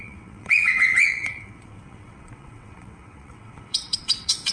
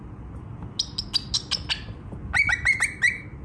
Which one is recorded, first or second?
second